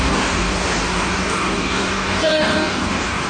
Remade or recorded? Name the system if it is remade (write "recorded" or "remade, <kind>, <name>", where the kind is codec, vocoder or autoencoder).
remade, codec, DAC